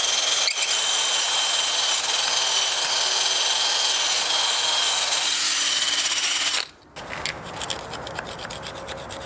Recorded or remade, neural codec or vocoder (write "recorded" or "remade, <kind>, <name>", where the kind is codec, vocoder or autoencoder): recorded